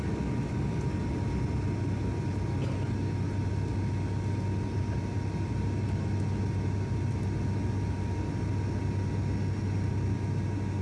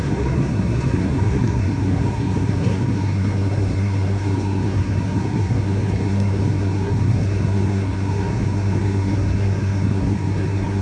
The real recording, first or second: first